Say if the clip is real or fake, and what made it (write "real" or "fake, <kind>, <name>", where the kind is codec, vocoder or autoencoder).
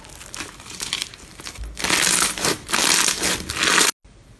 real